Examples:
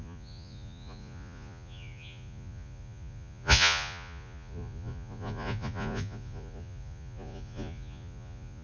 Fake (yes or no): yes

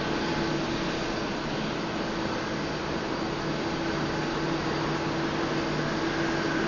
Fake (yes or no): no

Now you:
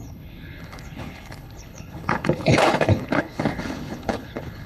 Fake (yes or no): yes